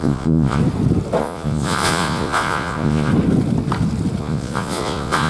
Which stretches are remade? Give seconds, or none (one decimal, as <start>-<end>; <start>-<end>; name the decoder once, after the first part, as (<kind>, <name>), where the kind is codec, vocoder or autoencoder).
0.0-0.6 (vocoder, Vocos); 1.2-3.1; 4.2-5.3